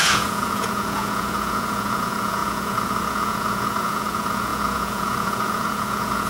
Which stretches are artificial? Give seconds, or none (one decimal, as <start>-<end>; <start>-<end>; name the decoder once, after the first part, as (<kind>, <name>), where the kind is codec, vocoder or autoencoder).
0.0-6.3 (vocoder, Vocos)

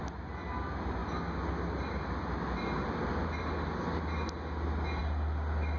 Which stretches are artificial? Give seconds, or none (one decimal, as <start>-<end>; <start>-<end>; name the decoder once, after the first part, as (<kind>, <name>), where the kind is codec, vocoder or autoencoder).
none

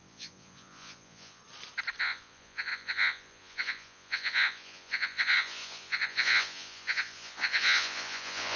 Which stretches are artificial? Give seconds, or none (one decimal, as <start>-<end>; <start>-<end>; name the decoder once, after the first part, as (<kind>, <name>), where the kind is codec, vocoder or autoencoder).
0.0-1.4 (vocoder, Vocos); 2.0-8.6

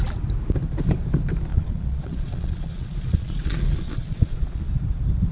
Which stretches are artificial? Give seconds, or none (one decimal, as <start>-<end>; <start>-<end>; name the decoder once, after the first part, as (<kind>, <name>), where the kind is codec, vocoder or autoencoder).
1.5-4.7 (vocoder, Vocos)

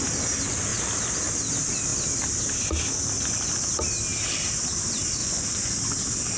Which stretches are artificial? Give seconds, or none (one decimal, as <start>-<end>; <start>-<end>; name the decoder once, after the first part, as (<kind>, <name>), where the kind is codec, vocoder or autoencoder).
5.2-5.7 (vocoder, Vocos)

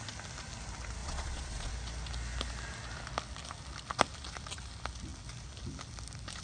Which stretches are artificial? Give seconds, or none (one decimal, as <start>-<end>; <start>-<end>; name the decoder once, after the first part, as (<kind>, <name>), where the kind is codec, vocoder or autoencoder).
1.0-1.7 (vocoder, Vocos)

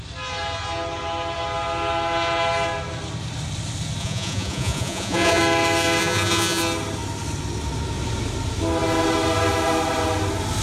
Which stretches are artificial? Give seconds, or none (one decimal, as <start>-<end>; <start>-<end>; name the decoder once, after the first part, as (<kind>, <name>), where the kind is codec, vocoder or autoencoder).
4.0-5.4 (vocoder, Vocos); 6.0-6.6